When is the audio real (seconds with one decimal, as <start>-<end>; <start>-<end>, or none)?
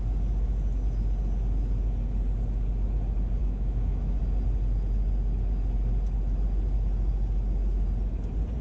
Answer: 0.0-3.4; 4.2-8.6